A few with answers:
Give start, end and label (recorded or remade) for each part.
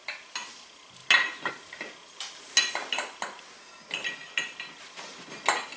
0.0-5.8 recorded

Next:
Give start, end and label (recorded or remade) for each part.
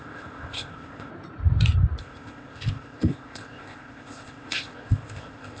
0.0-1.1 remade; 1.1-2.0 recorded; 2.0-5.6 remade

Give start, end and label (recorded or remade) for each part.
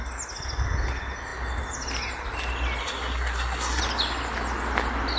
0.0-2.8 recorded; 2.8-3.8 remade; 3.8-5.2 recorded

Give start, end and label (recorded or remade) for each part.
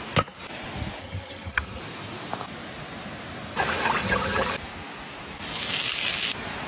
0.0-1.0 recorded; 1.0-1.8 remade; 1.8-4.0 recorded; 4.0-4.5 remade; 4.5-6.7 recorded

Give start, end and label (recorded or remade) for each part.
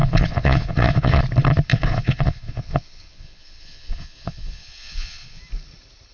0.0-1.2 remade; 1.2-1.7 recorded; 1.7-5.4 remade; 5.4-6.1 recorded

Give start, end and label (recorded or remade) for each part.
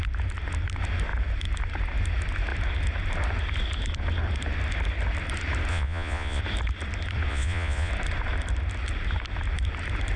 0.0-5.7 recorded; 5.7-6.4 remade; 6.4-7.3 recorded; 7.3-7.9 remade; 7.9-10.2 recorded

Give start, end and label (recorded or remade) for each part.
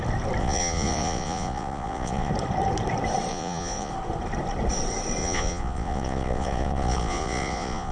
0.0-0.4 recorded; 0.4-2.3 remade; 2.3-3.3 recorded; 3.3-3.9 remade; 3.9-5.2 recorded; 5.2-7.9 remade